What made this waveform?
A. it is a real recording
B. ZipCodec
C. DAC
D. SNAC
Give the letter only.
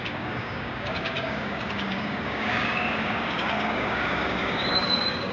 C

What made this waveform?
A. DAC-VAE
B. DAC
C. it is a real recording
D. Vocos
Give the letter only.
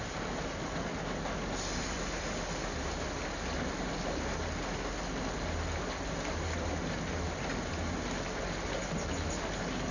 C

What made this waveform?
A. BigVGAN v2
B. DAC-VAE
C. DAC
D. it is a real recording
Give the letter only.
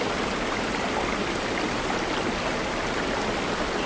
D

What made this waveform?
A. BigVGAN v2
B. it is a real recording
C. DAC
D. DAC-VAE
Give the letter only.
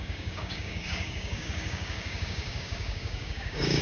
C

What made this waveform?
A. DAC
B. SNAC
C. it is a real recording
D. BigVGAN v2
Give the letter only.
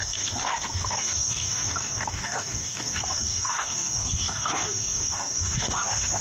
A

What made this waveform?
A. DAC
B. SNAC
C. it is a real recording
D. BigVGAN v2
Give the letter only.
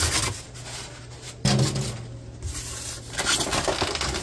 C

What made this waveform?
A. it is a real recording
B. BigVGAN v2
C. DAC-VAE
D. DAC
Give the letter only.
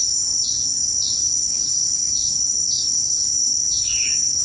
D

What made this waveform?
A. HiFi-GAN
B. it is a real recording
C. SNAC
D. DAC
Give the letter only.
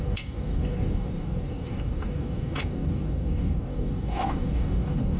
D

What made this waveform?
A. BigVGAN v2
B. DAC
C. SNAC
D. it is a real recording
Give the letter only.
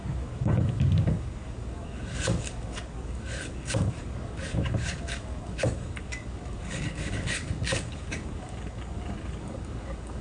B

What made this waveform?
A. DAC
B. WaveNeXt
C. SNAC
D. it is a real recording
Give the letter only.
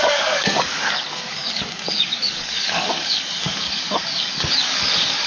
A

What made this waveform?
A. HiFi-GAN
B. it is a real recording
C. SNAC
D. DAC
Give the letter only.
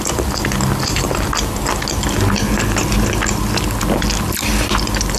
B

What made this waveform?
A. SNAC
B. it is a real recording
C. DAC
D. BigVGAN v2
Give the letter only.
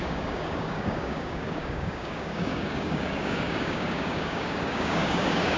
C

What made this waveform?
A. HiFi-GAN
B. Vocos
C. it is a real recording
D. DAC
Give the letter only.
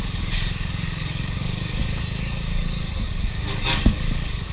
D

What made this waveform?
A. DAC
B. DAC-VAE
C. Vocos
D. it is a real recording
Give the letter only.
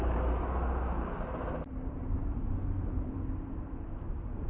D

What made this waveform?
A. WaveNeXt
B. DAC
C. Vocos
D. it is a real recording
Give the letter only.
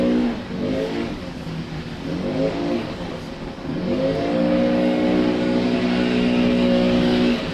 B